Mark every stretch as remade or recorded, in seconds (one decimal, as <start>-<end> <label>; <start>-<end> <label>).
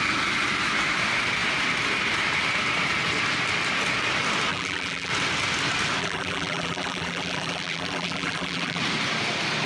0.0-4.5 recorded; 4.5-5.1 remade; 5.1-6.0 recorded; 6.0-8.8 remade; 8.8-9.7 recorded